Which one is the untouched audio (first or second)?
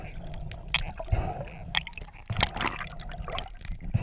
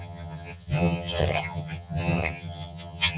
first